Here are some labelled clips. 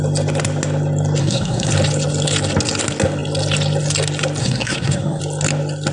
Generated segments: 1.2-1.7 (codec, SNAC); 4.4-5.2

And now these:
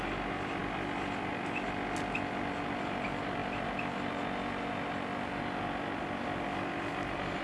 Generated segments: none

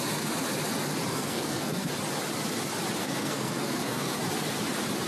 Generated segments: 1.1-1.9 (codec, SNAC); 3.0-4.2

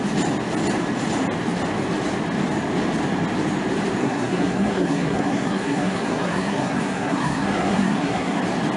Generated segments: 4.0-8.4 (codec, SNAC)

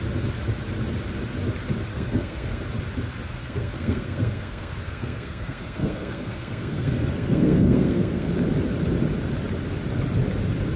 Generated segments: 1.9-2.6 (codec, SNAC); 3.4-8.3

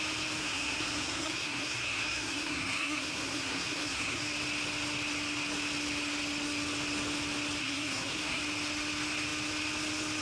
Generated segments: 0.4-4.2 (codec, SNAC); 7.6-8.4

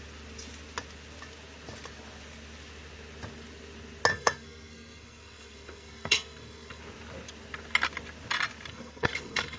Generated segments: 4.1-6.8 (codec, SNAC); 8.7-9.6